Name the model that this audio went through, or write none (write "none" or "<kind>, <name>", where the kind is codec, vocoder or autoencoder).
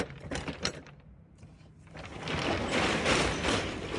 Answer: vocoder, BigVGAN v2